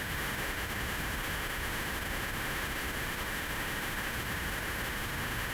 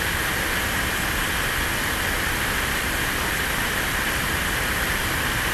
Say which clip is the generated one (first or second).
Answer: first